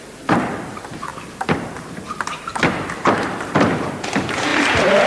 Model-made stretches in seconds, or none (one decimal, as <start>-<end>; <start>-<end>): 0.0-2.5; 3.0-5.1